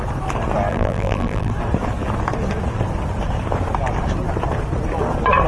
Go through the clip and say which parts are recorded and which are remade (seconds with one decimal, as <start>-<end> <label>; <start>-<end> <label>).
0.0-0.7 recorded; 0.7-1.5 remade; 1.5-5.5 recorded